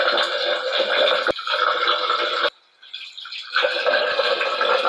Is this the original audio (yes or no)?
yes